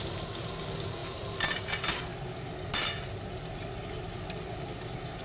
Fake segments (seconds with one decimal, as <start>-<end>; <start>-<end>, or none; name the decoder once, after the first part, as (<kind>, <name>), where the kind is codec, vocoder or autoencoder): none